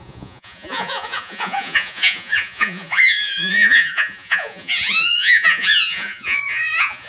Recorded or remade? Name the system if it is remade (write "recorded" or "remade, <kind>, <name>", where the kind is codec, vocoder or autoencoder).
remade, vocoder, Vocos